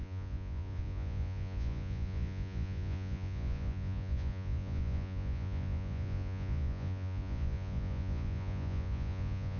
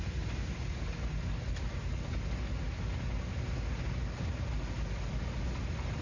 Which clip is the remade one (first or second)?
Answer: first